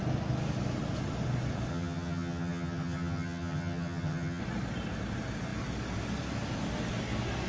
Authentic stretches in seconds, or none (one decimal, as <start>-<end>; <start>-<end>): 0.0-1.7; 4.4-7.5